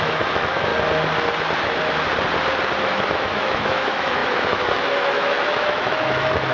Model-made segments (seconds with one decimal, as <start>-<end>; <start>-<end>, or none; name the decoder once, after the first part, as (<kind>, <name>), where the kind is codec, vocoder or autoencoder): 0.0-0.7 (autoencoder, DAC-VAE); 2.8-6.5